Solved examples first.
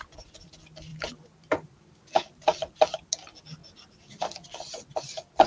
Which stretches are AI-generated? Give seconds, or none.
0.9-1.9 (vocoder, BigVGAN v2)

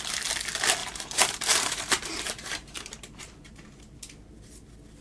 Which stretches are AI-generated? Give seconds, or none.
0.8-3.8 (vocoder, BigVGAN v2)

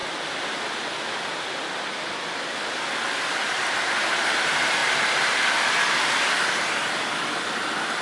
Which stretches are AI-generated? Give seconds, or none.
0.0-4.0 (vocoder, BigVGAN v2); 6.8-7.6

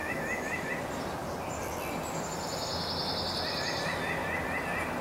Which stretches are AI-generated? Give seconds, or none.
0.0-0.7 (autoencoder, DAC-VAE)

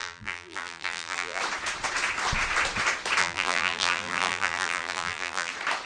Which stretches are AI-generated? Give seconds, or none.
0.0-1.4 (vocoder, BigVGAN v2); 3.2-5.5

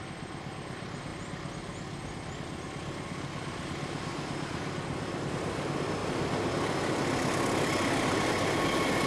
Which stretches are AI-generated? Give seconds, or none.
none

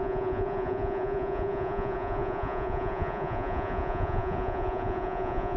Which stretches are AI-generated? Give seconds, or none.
0.0-5.6 (vocoder, Vocos)

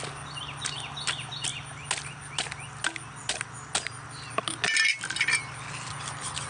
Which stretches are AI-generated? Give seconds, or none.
none